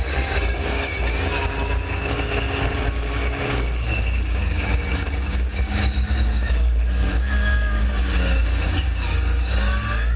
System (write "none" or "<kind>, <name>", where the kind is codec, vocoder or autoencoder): codec, DAC